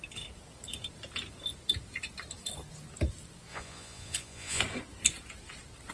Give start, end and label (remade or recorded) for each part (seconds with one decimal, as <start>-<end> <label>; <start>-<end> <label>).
0.0-3.5 recorded; 3.5-4.6 remade; 4.6-5.9 recorded